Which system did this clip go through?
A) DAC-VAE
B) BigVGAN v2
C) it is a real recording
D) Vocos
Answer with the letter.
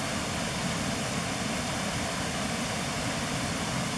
C